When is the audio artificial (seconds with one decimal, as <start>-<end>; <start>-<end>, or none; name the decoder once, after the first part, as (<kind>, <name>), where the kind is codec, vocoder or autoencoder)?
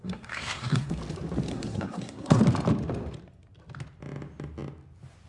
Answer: 0.0-1.0 (codec, SNAC); 1.5-2.4